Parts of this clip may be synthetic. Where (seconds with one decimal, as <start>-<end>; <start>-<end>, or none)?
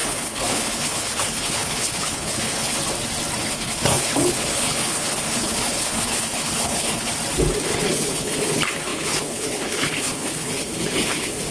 0.0-2.8; 3.4-7.1; 7.6-11.5